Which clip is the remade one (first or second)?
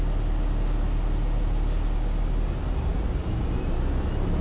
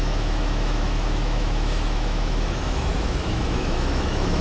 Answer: second